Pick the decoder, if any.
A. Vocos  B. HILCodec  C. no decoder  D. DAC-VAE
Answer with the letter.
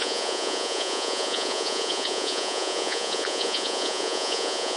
A